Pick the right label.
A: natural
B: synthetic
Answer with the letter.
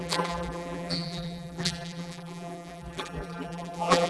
B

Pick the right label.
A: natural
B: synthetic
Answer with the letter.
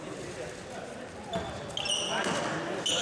A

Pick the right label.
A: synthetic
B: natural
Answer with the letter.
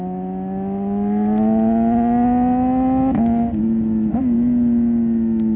B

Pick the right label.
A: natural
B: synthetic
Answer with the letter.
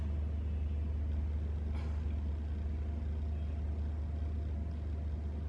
A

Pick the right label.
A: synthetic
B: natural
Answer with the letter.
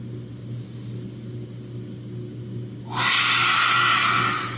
B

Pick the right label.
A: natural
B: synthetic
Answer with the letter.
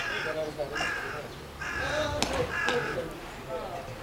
A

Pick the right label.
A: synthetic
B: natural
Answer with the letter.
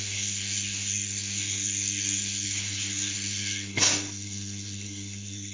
A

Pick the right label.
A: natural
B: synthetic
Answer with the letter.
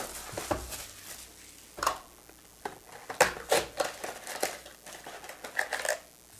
A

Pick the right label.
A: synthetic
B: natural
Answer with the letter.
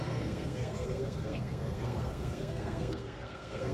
A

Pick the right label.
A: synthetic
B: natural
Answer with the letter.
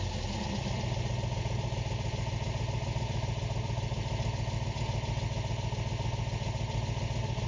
B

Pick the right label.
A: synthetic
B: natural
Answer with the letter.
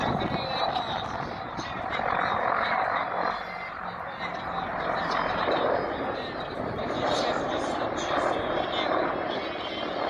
B